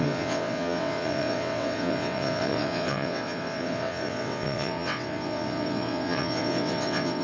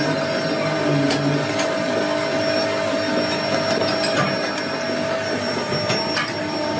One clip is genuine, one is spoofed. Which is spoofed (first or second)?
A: first